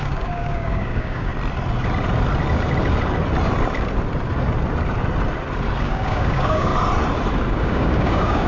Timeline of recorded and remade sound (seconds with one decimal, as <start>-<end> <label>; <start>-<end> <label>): 0.0-1.3 remade; 1.3-5.8 recorded; 5.8-6.7 remade; 6.7-7.5 recorded; 7.5-8.5 remade